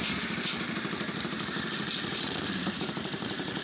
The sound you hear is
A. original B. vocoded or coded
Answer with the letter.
B